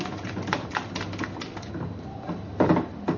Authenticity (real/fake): real